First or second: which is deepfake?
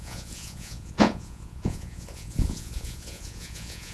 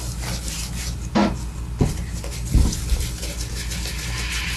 first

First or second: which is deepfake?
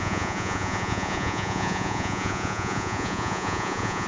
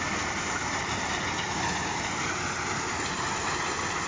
first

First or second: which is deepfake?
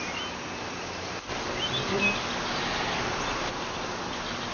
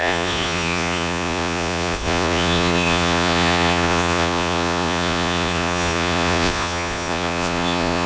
second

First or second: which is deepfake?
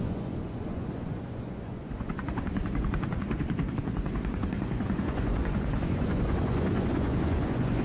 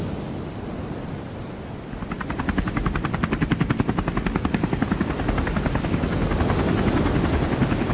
first